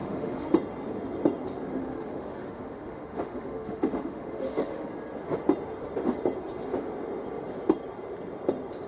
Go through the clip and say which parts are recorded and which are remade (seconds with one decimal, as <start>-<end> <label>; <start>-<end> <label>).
0.0-0.5 remade; 0.5-1.8 recorded; 1.8-4.9 remade; 4.9-8.9 recorded